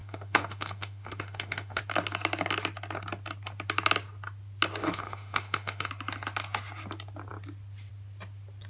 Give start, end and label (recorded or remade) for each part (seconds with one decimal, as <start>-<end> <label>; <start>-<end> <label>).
0.0-1.8 remade; 1.8-4.8 recorded; 4.8-5.9 remade; 5.9-8.7 recorded